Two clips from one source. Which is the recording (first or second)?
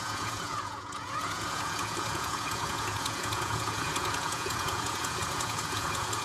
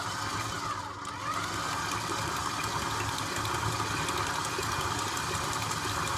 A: second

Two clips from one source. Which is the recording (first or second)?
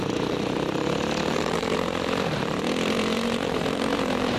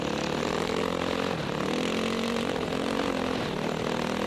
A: second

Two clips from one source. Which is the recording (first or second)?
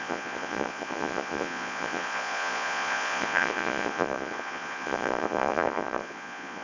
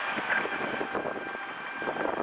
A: second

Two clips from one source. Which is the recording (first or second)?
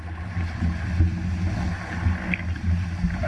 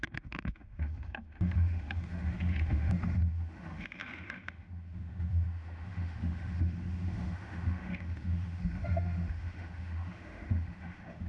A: first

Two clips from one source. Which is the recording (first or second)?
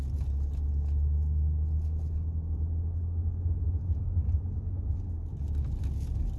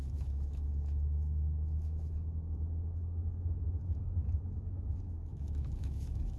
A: first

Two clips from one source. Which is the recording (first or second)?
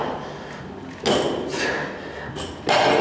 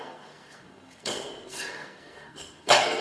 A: first